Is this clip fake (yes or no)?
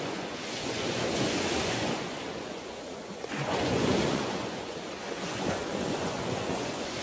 yes